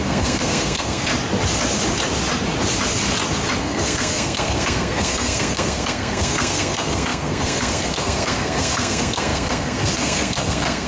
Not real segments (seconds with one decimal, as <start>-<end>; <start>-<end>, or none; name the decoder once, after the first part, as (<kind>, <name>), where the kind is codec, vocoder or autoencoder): 0.0-1.1 (codec, SNAC); 3.6-10.9